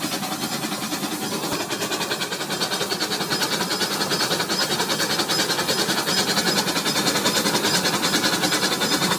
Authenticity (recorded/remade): recorded